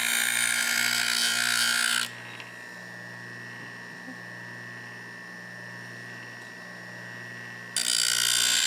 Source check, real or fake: real